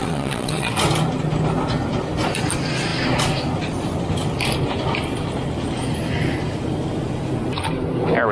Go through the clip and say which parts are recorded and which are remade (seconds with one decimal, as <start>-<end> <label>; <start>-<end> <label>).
0.0-0.7 remade; 0.7-8.3 recorded

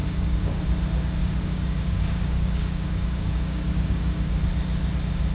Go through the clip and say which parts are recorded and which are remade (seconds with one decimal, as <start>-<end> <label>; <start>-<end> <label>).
0.0-0.6 remade; 0.6-1.2 recorded; 1.2-4.4 remade; 4.4-5.3 recorded

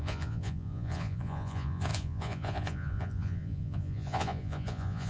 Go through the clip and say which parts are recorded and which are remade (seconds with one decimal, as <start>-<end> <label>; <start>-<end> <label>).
0.0-5.1 remade